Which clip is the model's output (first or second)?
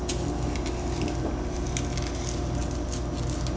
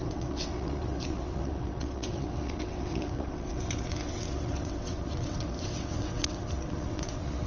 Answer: second